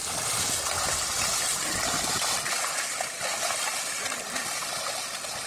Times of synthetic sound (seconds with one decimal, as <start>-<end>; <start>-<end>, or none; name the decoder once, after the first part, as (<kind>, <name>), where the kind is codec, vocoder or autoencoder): 0.0-0.5 (vocoder, BigVGAN v2)